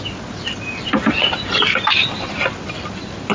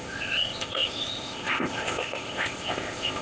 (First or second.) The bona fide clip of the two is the first